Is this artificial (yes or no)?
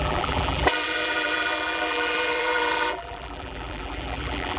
yes